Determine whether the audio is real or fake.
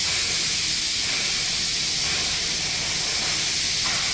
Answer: real